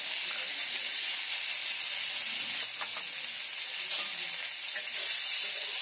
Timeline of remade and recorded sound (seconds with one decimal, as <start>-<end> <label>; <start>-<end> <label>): 0.0-0.6 recorded; 0.6-1.2 remade; 1.2-5.8 recorded